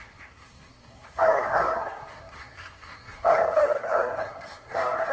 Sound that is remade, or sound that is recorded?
remade